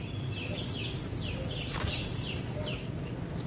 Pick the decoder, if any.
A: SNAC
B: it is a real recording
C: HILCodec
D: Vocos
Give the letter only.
B